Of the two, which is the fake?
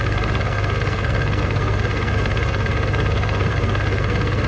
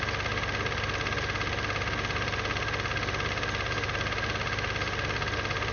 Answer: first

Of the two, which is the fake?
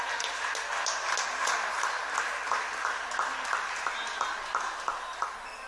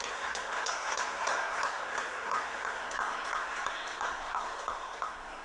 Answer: second